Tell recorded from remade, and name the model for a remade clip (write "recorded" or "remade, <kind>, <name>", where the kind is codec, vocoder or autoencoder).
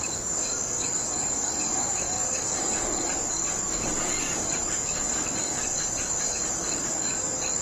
remade, codec, DAC